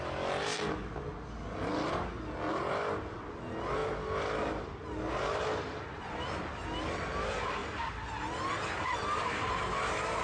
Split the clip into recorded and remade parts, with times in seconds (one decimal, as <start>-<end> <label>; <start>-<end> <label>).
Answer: 0.0-10.2 recorded